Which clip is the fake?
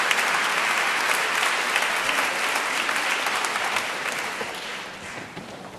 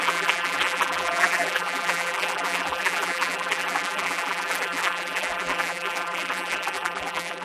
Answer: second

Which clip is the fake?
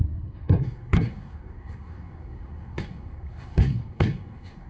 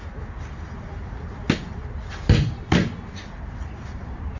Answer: first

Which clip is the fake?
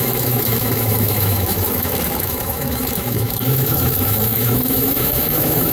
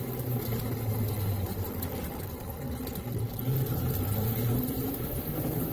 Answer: first